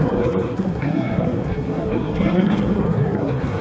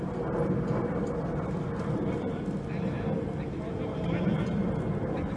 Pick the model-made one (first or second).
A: first